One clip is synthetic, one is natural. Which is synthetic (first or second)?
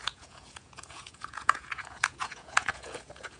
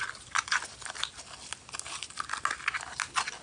first